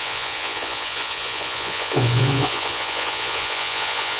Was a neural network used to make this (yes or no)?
yes